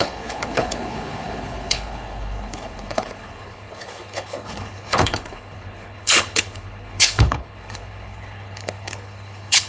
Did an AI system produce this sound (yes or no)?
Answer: yes